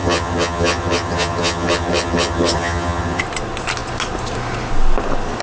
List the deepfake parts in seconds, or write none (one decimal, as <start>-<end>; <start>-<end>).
0.0-3.2